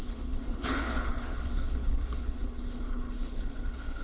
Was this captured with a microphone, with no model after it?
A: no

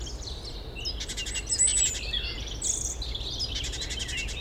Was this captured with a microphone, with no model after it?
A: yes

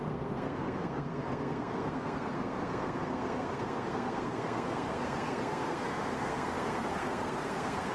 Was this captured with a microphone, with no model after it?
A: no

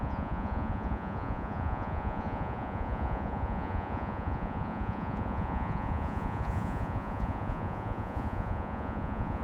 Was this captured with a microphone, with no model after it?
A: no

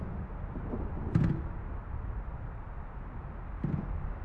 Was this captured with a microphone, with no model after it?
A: yes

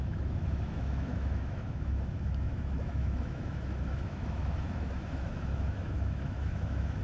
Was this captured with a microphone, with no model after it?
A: no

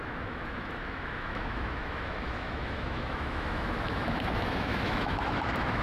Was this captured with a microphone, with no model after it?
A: no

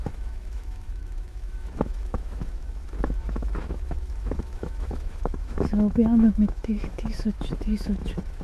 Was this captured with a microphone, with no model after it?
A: no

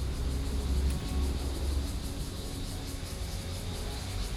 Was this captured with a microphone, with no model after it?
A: yes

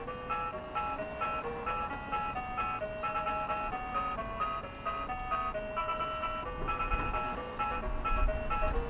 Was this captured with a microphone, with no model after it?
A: yes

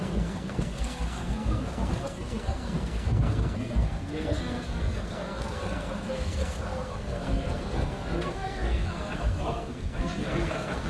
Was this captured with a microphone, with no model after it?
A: no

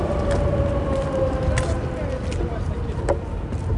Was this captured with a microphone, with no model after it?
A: yes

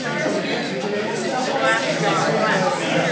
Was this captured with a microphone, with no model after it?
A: yes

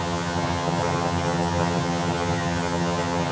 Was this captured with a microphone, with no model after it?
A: no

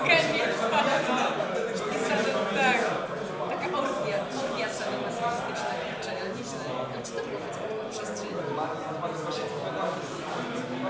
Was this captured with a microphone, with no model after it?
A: yes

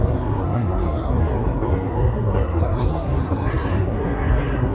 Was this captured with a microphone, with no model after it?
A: no